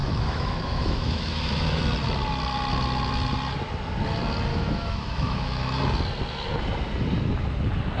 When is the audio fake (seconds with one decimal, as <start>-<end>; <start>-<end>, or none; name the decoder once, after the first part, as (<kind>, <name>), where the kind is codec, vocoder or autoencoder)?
0.0-1.8 (autoencoder, DAC-VAE); 4.5-5.8